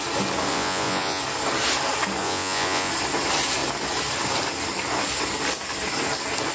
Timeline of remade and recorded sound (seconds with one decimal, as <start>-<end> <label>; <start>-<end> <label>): 0.0-0.5 recorded; 0.5-1.2 remade; 1.2-2.2 recorded; 2.2-2.9 remade; 2.9-6.5 recorded